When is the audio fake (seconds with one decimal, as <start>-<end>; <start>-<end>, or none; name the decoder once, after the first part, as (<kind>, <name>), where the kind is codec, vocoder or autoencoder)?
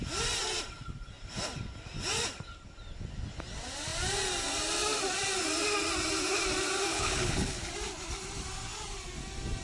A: 6.9-7.7 (codec, HILCodec)